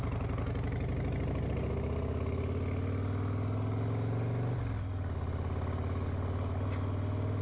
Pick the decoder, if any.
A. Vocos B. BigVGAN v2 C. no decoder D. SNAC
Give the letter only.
C